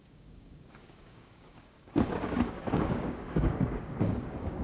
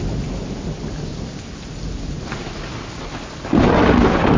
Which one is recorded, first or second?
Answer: second